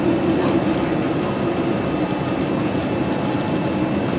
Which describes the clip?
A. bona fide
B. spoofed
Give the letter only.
A